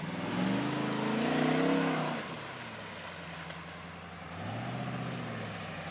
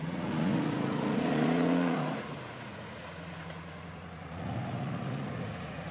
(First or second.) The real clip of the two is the first